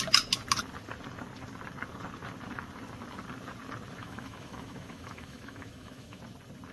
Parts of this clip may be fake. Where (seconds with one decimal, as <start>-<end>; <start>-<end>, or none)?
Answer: 4.0-6.2